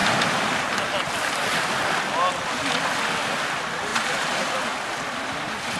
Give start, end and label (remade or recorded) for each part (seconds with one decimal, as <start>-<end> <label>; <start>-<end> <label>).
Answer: 0.0-3.9 recorded; 3.9-4.5 remade; 4.5-5.8 recorded